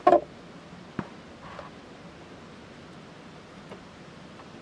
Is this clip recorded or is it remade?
recorded